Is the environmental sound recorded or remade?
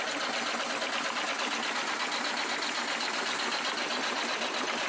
recorded